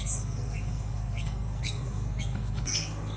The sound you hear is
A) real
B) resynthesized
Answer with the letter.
B